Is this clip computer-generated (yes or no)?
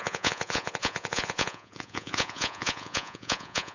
yes